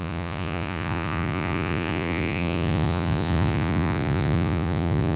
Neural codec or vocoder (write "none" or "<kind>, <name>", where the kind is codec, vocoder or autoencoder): vocoder, Vocos